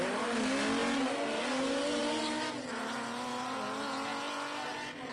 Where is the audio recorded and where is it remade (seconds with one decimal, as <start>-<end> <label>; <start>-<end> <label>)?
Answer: 0.0-5.1 recorded